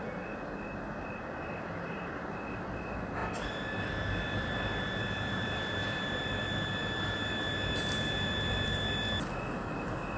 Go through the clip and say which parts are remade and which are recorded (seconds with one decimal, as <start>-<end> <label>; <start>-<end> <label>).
0.0-3.2 recorded; 3.2-7.5 remade; 7.5-10.2 recorded